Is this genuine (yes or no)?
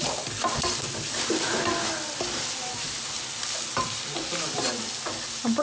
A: yes